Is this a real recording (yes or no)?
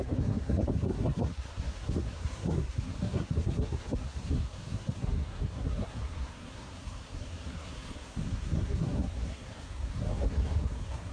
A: no